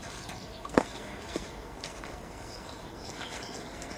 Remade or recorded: remade